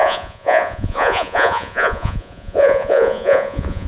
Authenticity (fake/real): fake